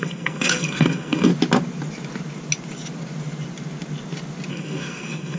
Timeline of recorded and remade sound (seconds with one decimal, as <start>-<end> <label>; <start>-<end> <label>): 0.0-1.3 remade; 1.3-4.5 recorded; 4.5-5.4 remade